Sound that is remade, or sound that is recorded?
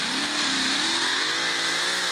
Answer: remade